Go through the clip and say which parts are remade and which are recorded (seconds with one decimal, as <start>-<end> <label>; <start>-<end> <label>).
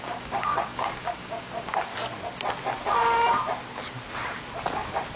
0.0-1.9 remade; 1.9-5.2 recorded